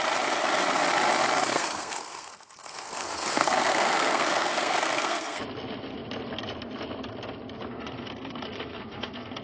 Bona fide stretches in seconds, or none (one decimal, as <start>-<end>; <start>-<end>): 0.0-1.5; 5.4-7.7